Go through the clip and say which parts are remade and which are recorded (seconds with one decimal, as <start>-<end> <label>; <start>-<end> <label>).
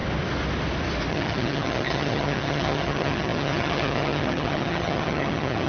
0.0-1.1 recorded; 1.1-5.7 remade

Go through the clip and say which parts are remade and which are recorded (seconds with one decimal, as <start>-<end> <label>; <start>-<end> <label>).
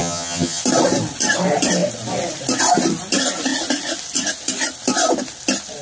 0.0-0.6 remade; 0.6-5.8 recorded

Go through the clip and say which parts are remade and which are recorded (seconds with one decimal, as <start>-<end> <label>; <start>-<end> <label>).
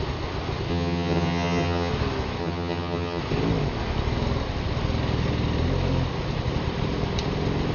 0.0-0.7 recorded; 0.7-1.9 remade; 1.9-2.4 recorded; 2.4-3.2 remade; 3.2-7.7 recorded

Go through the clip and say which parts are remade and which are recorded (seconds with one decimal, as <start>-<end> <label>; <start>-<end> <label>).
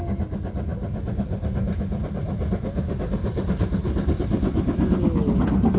0.0-5.8 recorded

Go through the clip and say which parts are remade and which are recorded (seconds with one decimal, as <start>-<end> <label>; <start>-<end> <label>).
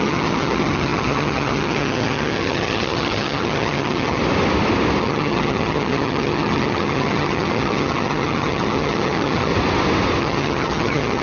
0.0-4.2 remade; 4.2-5.0 recorded; 5.0-9.5 remade; 9.5-10.2 recorded; 10.2-11.2 remade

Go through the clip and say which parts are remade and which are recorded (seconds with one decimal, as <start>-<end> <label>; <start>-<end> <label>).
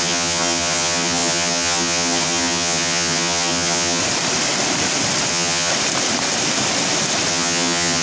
0.0-4.0 remade; 4.0-5.3 recorded; 5.3-5.7 remade; 5.7-7.3 recorded; 7.3-8.0 remade